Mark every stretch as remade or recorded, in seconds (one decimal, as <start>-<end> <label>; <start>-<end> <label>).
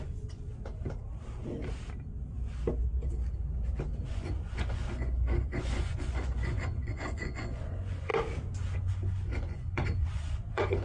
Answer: 0.0-0.5 remade; 0.5-4.1 recorded; 4.1-8.1 remade; 8.1-8.9 recorded; 8.9-10.8 remade